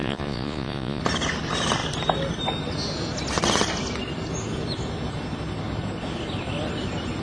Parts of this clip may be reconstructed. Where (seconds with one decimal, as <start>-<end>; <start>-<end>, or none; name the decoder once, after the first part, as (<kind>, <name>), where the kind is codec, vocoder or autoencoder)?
0.0-1.0 (vocoder, Vocos)